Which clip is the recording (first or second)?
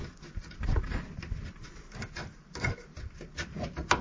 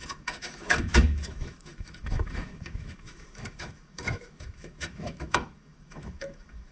first